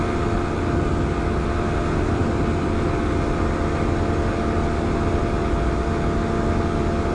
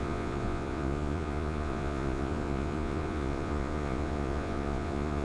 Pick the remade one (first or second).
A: second